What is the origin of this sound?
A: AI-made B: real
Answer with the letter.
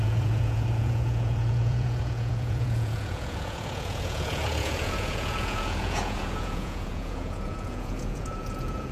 A